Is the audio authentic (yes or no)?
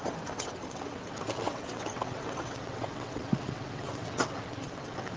no